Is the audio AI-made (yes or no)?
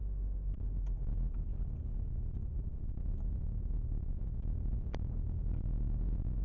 no